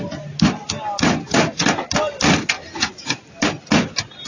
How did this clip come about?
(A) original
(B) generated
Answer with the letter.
A